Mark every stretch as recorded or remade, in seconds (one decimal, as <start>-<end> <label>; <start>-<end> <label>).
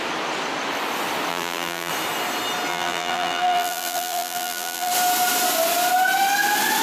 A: 0.0-1.3 recorded; 1.3-1.9 remade; 1.9-2.7 recorded; 2.7-4.9 remade; 4.9-6.8 recorded